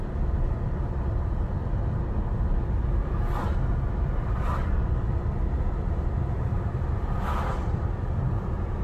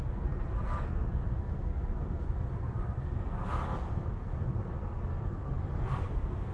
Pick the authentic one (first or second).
first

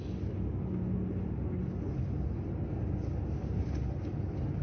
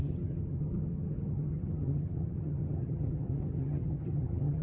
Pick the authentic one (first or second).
first